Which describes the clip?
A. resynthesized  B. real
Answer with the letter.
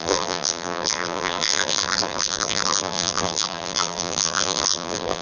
A